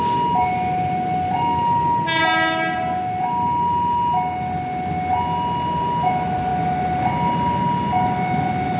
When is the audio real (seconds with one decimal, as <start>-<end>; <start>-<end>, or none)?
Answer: 0.0-8.8